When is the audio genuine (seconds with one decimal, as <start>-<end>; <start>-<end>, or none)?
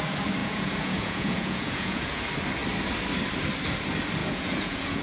0.0-0.4; 2.2-4.2